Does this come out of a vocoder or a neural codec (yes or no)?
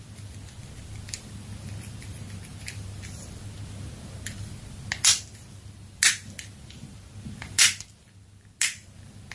no